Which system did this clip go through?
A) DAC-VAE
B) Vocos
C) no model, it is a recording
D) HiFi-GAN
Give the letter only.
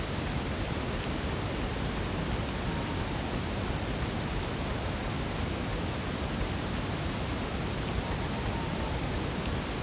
C